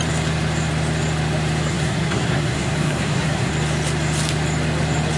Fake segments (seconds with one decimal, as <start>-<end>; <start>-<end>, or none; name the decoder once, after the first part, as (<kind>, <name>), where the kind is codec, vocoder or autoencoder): 1.7-3.5 (codec, SNAC)

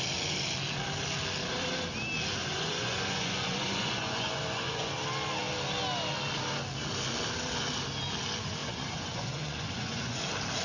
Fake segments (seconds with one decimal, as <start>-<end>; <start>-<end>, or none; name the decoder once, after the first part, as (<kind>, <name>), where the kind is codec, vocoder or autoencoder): 2.4-4.9 (vocoder, Vocos); 8.6-10.2

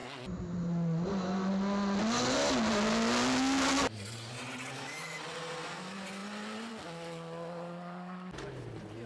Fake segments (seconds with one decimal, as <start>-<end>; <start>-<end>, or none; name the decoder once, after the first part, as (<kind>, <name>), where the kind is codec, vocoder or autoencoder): none